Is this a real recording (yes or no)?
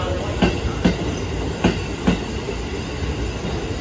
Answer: yes